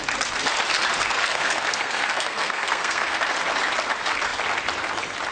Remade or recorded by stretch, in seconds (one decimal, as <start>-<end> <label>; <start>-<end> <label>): 0.0-1.0 recorded; 1.0-3.2 remade; 3.2-5.3 recorded